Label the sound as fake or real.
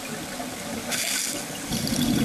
real